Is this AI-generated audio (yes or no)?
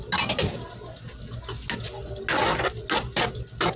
no